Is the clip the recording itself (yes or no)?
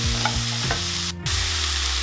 yes